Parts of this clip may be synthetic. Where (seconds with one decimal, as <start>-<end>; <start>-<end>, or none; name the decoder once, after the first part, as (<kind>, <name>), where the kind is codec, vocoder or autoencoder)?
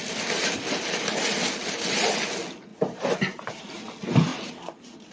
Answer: 2.7-3.5 (vocoder, BigVGAN v2)